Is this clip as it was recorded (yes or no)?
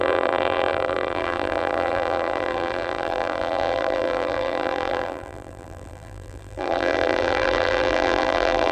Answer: no